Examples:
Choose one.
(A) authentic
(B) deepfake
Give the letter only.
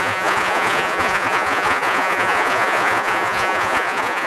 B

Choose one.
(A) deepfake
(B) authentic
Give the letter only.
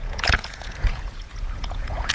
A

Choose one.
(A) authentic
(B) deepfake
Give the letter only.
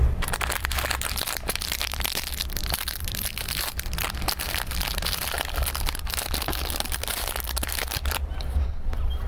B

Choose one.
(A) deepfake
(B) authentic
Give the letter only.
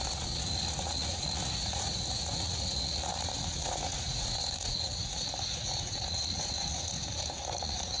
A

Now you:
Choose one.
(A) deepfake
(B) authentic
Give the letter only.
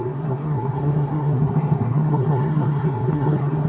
A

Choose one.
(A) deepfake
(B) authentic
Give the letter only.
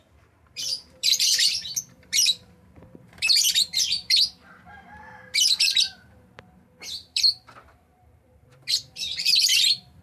A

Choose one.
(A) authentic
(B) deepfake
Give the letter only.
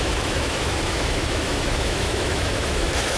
B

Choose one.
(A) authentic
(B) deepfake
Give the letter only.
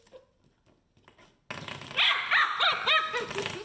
A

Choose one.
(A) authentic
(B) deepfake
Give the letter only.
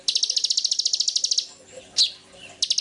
A